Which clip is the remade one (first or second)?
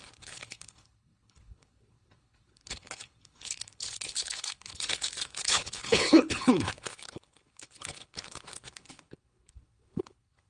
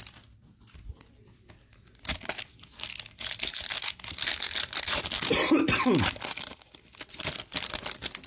first